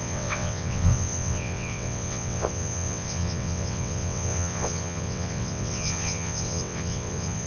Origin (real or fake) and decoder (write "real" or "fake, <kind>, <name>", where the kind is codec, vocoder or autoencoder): fake, vocoder, WaveNeXt